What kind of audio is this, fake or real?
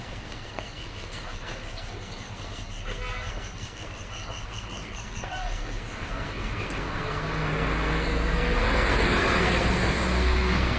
fake